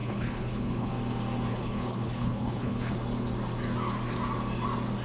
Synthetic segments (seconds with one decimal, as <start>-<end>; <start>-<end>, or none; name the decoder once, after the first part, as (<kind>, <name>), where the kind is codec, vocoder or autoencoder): 0.0-0.9 (codec, HILCodec); 1.5-2.9